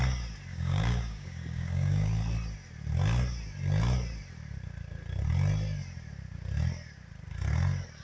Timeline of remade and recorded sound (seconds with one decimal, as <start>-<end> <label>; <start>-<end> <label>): 0.0-0.5 recorded; 0.5-2.1 remade; 2.1-8.0 recorded